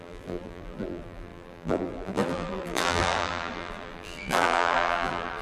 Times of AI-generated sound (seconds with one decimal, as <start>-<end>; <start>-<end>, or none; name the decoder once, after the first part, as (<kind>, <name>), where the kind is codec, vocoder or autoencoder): 0.0-5.4 (vocoder, BigVGAN v2)

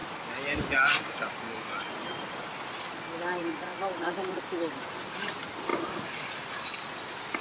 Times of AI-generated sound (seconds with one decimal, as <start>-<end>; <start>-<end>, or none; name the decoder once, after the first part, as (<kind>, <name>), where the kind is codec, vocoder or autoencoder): 3.5-4.4 (vocoder, Vocos)

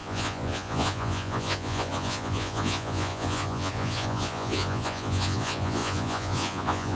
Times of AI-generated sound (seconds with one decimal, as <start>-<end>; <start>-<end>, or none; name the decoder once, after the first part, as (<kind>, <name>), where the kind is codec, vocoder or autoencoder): 0.0-7.0 (vocoder, Vocos)

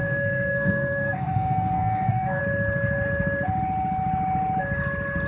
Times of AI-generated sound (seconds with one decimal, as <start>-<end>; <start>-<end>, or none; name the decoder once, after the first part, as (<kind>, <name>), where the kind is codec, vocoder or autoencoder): 0.0-2.4 (codec, SNAC)

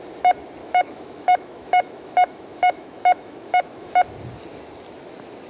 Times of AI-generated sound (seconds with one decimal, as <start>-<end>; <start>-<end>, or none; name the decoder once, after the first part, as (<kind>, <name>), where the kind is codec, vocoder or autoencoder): 0.6-3.9 (autoencoder, DAC-VAE)

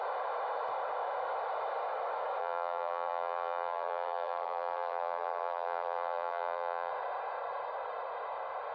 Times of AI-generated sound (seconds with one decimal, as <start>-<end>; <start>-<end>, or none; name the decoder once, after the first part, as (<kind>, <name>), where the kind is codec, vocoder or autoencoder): 2.4-6.9 (vocoder, BigVGAN v2)